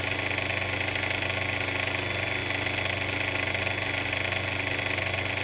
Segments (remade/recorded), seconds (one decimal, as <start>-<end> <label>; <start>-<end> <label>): 0.0-5.4 recorded